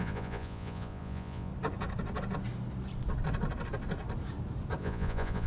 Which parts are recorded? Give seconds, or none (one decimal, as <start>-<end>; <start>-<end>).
1.5-4.8